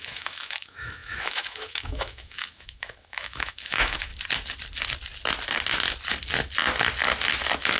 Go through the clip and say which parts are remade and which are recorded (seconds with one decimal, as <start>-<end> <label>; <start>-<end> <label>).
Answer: 0.0-4.1 remade; 4.1-7.8 recorded